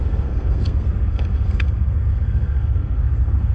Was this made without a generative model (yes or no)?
no